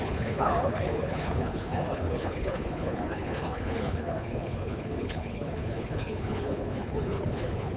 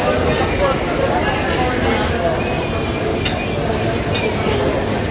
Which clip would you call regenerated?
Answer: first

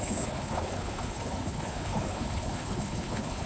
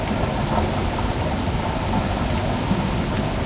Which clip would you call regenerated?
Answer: first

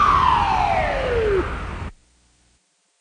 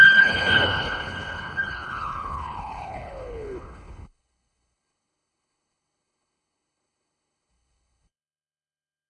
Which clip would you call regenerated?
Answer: second